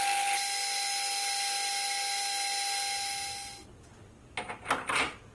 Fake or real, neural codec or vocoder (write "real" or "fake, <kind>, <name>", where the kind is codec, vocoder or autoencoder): real